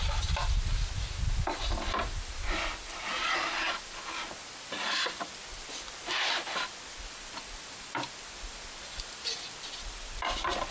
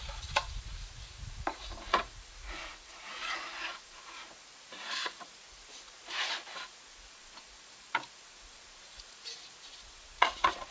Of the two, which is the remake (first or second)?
second